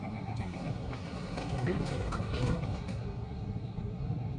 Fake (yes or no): yes